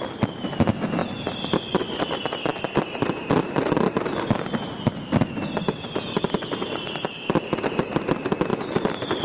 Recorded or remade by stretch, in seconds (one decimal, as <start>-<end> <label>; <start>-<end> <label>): 0.0-8.5 recorded; 8.5-9.2 remade